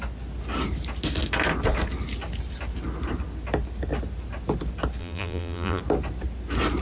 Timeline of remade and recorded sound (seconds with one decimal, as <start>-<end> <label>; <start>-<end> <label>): 0.0-5.0 recorded; 5.0-5.8 remade; 5.8-6.8 recorded